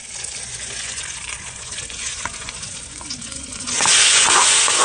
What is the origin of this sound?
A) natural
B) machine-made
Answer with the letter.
B